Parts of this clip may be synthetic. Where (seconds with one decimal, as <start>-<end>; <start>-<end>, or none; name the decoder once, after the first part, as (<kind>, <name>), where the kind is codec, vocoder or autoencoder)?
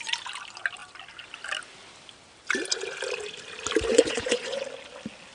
3.9-4.6 (vocoder, Vocos)